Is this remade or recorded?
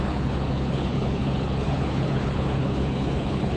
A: remade